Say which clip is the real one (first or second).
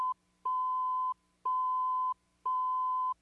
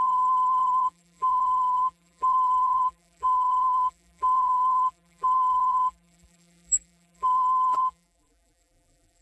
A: first